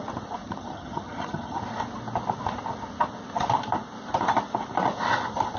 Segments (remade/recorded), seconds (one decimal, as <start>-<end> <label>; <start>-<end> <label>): 0.0-0.4 recorded; 0.4-1.6 remade; 1.6-5.6 recorded